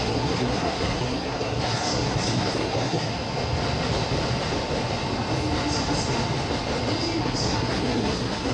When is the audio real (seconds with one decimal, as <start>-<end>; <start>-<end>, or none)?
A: 3.1-7.2